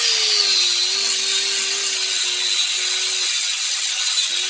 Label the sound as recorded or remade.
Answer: recorded